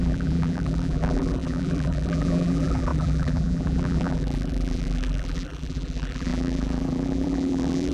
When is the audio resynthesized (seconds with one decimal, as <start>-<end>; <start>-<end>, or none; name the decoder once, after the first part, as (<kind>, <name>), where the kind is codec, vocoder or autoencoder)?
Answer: 0.0-7.9 (vocoder, BigVGAN v2)